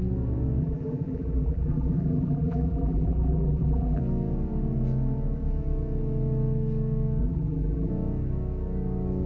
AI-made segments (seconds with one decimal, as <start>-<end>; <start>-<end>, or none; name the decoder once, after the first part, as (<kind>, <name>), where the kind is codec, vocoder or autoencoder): 0.6-4.0 (vocoder, BigVGAN v2); 7.2-7.9